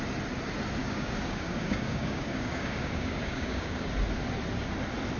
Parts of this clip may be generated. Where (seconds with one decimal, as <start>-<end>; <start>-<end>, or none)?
0.8-3.9